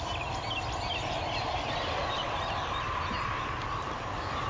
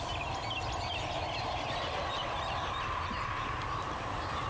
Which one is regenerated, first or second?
second